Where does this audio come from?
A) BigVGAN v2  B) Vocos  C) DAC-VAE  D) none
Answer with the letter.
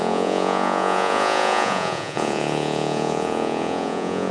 B